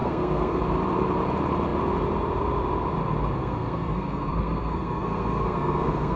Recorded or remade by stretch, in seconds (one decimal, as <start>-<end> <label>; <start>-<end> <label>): 0.0-0.6 remade; 0.6-3.4 recorded; 3.4-6.2 remade